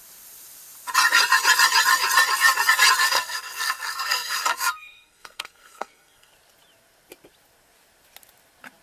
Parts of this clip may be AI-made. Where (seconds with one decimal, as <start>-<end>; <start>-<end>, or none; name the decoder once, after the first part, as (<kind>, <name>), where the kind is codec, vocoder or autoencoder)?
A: 3.0-6.3 (codec, SNAC)